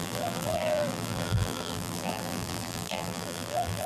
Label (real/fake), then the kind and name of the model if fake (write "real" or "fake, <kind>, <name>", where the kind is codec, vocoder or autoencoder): fake, vocoder, BigVGAN v2